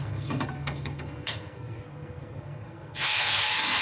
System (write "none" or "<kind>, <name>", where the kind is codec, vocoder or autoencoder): codec, SNAC